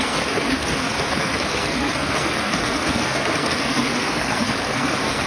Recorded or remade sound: remade